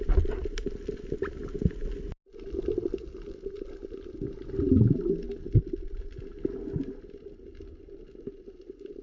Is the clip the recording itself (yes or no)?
yes